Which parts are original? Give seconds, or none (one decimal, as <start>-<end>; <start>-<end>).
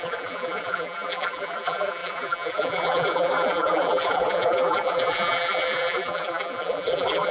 none